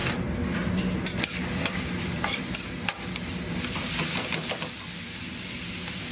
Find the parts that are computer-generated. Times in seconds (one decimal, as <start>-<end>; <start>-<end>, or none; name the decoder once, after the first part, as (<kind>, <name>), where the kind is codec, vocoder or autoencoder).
none